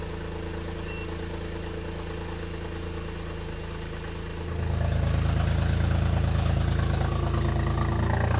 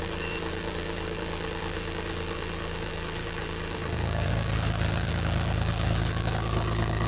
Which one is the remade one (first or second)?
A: second